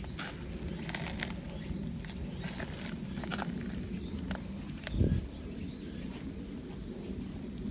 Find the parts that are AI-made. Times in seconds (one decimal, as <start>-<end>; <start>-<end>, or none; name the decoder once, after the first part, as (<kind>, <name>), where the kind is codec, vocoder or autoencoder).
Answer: 3.3-5.0 (vocoder, BigVGAN v2)